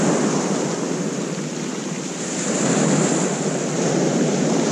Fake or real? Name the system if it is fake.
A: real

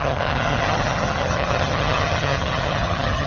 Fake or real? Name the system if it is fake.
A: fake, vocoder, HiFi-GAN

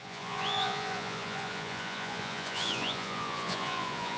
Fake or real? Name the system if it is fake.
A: fake, vocoder, Vocos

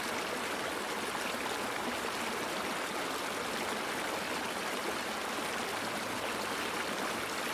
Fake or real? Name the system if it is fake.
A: real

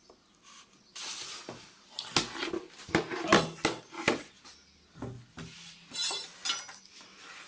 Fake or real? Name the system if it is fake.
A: real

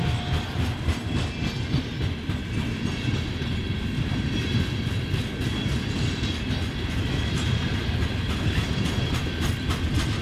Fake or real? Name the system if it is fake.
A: real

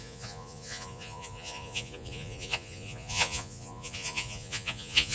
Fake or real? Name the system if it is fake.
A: fake, vocoder, Vocos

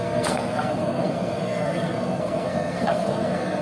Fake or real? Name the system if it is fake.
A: fake, codec, SNAC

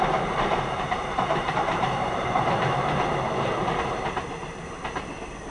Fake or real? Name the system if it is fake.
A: fake, vocoder, BigVGAN v2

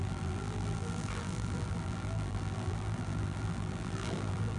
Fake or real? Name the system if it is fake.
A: fake, vocoder, BigVGAN v2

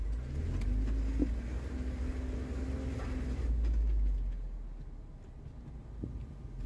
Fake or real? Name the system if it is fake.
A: real